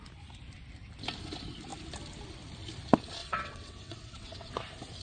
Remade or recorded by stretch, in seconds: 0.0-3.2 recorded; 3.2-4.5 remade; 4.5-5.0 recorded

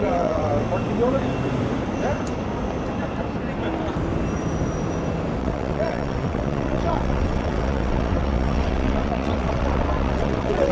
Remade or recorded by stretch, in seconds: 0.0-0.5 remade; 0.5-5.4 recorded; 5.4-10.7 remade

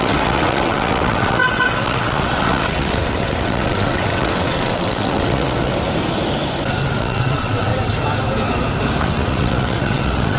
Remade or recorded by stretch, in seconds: 0.0-5.7 remade; 5.7-7.0 recorded; 7.0-7.7 remade; 7.7-9.0 recorded; 9.0-10.4 remade

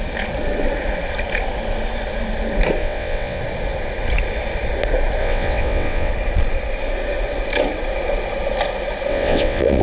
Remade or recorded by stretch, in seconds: 0.0-2.8 recorded; 2.8-3.4 remade; 3.4-5.2 recorded; 5.2-6.1 remade; 6.1-9.1 recorded; 9.1-9.8 remade